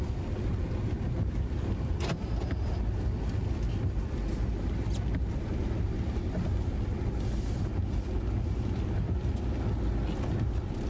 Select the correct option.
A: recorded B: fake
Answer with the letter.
A